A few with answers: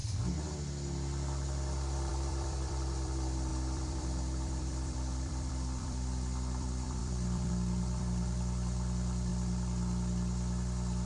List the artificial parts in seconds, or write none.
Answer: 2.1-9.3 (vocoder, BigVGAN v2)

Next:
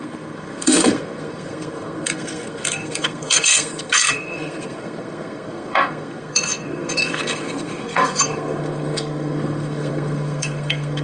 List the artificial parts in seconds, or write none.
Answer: 0.0-11.0 (codec, SNAC)

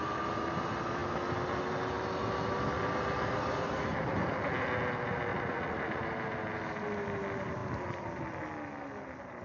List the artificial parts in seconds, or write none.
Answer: 5.3-6.0 (vocoder, Vocos)

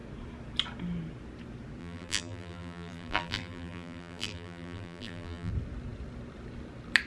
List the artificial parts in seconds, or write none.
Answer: 1.8-5.5 (vocoder, BigVGAN v2)

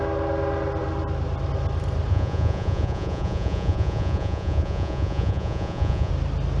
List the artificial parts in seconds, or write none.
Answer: 2.1-6.1 (vocoder, Vocos)

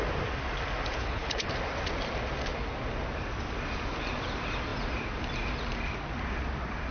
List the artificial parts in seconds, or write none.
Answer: 1.0-1.5 (codec, HILCodec)

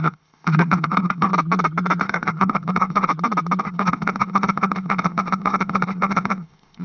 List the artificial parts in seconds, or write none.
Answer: 0.0-1.3 (codec, ZipCodec); 2.0-3.1; 3.6-6.8

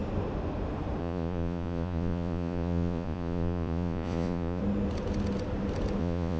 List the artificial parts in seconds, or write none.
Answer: 1.0-4.6 (vocoder, Vocos); 6.0-6.4